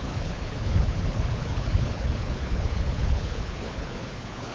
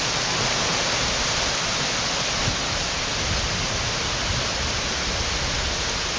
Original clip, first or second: second